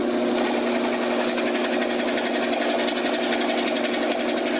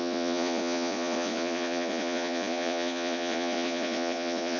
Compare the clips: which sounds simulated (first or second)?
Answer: second